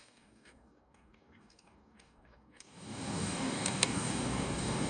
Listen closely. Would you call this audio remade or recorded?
remade